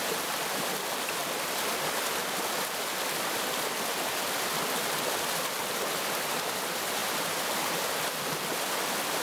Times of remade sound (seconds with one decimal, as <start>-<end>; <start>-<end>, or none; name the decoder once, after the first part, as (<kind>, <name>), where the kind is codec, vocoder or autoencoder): 0.0-1.2 (vocoder, BigVGAN v2); 6.3-9.2